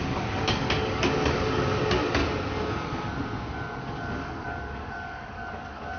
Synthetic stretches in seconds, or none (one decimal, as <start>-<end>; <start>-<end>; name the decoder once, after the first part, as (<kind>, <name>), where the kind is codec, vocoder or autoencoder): 0.0-2.2 (codec, DAC); 3.9-6.0